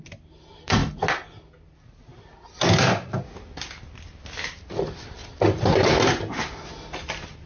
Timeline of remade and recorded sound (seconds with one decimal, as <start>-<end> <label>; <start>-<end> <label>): 0.0-7.5 recorded